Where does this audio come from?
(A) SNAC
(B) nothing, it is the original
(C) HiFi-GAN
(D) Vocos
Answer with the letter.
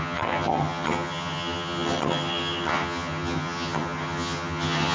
C